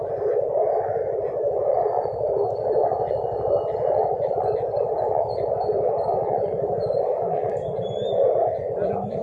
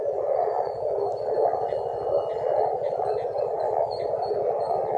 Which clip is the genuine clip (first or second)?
second